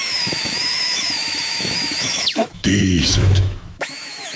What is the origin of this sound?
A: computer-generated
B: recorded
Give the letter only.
A